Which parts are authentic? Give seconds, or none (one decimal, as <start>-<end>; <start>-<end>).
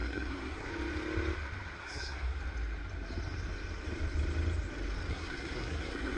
0.7-1.8; 2.4-5.1